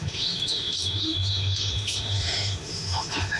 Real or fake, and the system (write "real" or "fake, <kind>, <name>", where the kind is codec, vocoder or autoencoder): fake, autoencoder, DAC-VAE